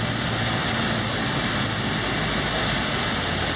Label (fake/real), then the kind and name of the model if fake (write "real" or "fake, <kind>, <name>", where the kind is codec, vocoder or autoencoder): real